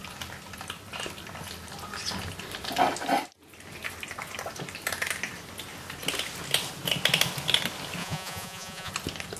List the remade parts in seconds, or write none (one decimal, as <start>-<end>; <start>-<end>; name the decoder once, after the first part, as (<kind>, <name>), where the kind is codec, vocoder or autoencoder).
8.0-8.9 (vocoder, Vocos)